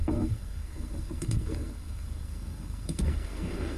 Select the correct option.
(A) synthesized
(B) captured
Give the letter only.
A